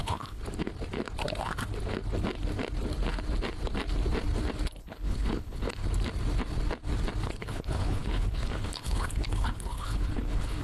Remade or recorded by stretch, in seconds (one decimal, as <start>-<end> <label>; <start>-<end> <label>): 0.0-0.4 remade; 0.4-4.8 recorded; 4.8-5.8 remade; 5.8-7.4 recorded; 7.4-10.6 remade